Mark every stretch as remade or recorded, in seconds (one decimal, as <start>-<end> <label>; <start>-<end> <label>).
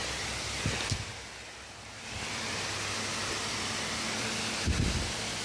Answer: 0.0-5.4 recorded